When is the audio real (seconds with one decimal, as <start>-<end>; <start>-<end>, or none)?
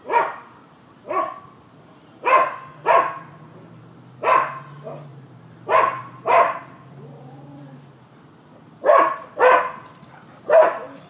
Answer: 0.0-5.1; 6.6-11.1